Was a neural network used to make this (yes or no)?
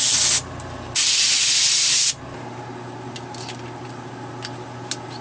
no